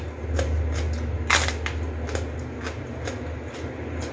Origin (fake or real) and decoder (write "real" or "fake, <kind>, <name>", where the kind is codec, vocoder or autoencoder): real